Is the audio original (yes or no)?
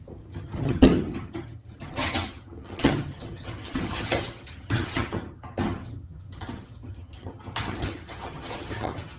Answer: no